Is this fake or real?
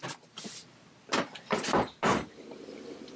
real